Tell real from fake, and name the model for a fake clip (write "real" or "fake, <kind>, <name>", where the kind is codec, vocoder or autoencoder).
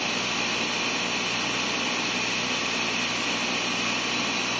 real